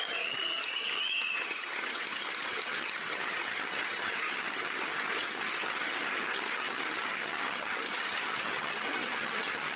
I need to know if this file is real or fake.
fake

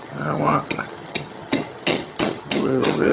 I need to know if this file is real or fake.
fake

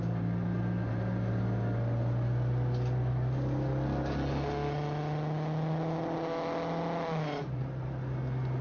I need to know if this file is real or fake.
real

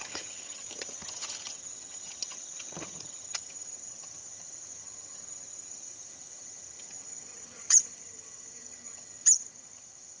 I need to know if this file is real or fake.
fake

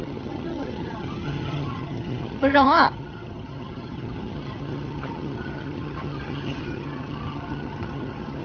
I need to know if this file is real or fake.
fake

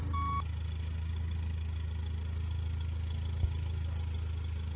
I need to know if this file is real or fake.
real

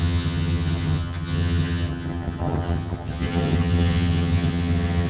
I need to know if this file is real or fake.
fake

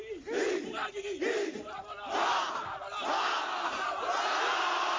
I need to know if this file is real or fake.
real